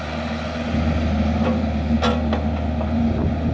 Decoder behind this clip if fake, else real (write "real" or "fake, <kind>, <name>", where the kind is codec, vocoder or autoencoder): real